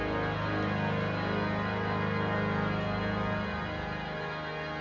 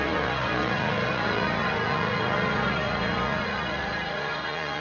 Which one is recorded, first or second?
first